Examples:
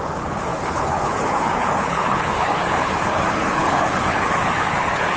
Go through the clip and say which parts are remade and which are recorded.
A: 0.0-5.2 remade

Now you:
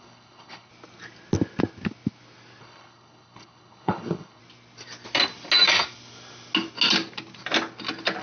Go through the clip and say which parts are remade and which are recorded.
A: 0.0-0.7 remade; 0.7-2.6 recorded; 2.6-4.4 remade; 4.4-8.2 recorded

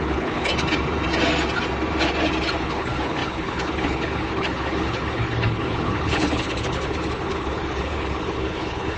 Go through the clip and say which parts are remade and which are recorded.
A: 0.0-0.5 remade; 0.5-2.6 recorded; 2.6-9.0 remade

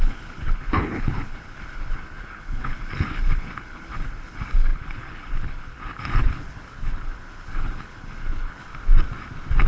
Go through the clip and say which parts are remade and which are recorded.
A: 0.0-8.7 remade; 8.7-9.7 recorded

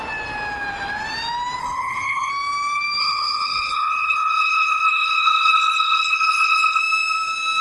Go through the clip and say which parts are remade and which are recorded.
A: 0.0-1.6 recorded; 1.6-2.3 remade; 2.3-3.0 recorded; 3.0-6.8 remade; 6.8-7.6 recorded